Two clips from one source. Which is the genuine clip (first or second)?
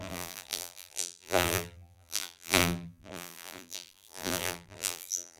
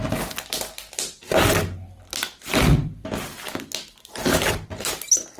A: second